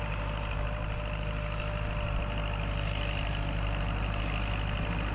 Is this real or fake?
real